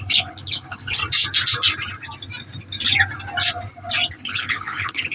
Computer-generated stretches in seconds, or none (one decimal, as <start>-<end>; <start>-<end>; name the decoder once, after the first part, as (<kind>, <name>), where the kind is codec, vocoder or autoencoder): 0.0-1.0 (codec, HILCodec); 4.1-5.1